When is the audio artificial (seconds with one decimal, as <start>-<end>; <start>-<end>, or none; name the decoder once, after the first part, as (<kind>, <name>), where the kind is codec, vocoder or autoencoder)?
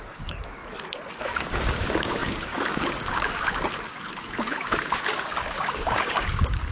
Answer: 0.0-0.6 (codec, DAC); 1.2-6.7